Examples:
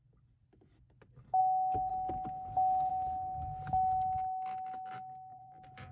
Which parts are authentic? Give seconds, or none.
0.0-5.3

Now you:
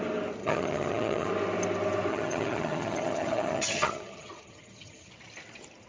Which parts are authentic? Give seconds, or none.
0.0-0.4; 1.3-2.1; 5.1-5.9